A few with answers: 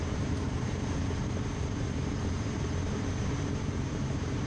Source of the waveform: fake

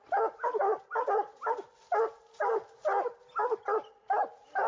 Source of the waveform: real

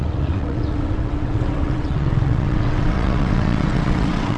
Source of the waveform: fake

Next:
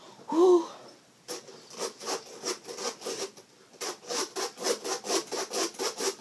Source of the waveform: real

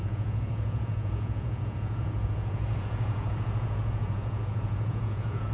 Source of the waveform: fake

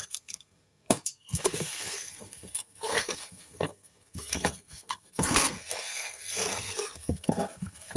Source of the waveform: fake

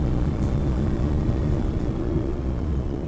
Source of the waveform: fake